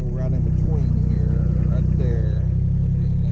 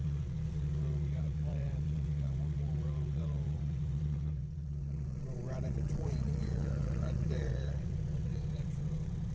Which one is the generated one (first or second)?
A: second